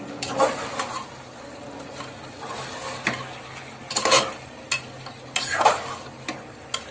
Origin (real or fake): real